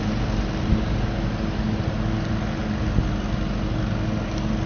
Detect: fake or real real